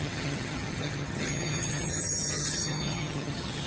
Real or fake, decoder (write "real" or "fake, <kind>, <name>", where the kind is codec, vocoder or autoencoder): fake, vocoder, HiFi-GAN